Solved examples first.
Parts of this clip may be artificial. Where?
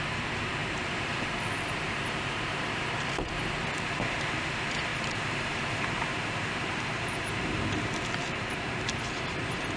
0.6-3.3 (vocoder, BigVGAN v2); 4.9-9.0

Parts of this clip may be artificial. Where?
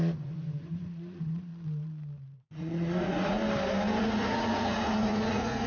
0.0-1.5 (vocoder, Vocos); 2.3-3.4; 4.0-5.7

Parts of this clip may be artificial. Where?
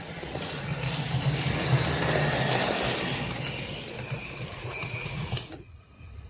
0.0-0.7 (vocoder, Vocos); 4.5-6.3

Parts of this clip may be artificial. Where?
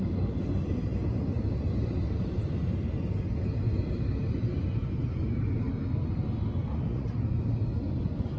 6.7-7.2 (vocoder, Vocos)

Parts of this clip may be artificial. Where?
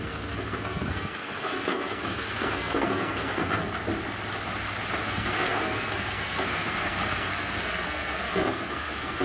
0.0-3.6 (codec, SNAC); 5.0-9.2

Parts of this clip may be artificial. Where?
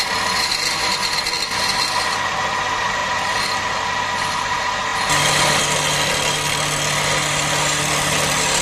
none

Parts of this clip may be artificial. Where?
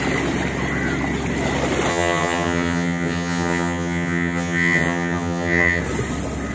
1.9-5.8 (vocoder, HiFi-GAN)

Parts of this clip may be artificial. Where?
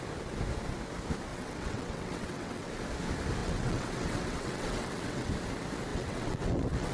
1.3-2.7 (vocoder, WaveNeXt); 3.4-5.3; 5.9-6.9